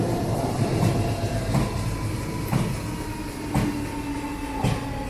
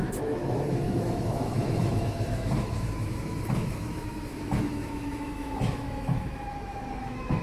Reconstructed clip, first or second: second